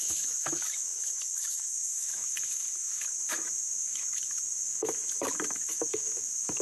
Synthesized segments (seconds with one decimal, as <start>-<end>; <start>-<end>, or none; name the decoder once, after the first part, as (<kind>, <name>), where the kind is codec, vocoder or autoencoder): 0.0-6.6 (autoencoder, DAC-VAE)